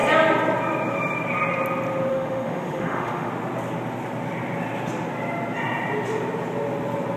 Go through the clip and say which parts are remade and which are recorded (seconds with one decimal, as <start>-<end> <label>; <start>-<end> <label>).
0.0-2.1 recorded; 2.1-3.3 remade; 3.3-7.2 recorded